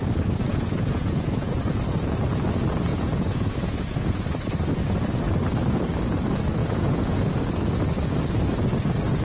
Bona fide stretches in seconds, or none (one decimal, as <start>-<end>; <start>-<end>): 0.0-0.5; 1.6-2.9; 4.2-6.6; 7.3-9.2